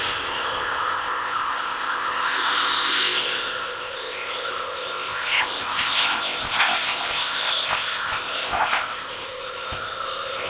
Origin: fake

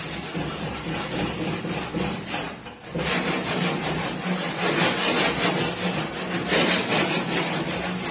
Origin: real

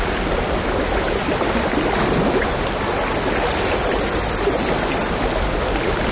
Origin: real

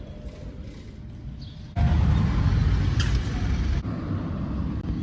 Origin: real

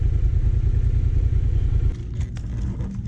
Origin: real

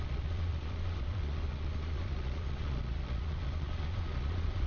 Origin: fake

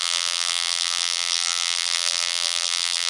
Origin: fake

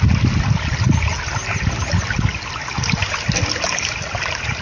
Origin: real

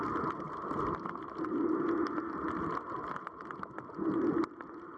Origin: real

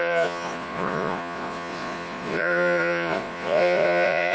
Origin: fake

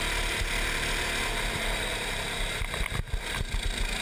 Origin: real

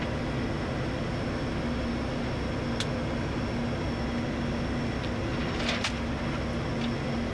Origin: real